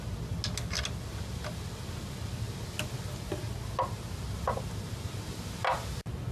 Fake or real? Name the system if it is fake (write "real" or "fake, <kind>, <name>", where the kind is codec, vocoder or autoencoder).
real